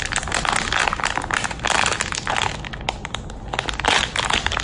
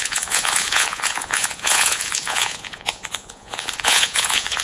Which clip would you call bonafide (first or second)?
first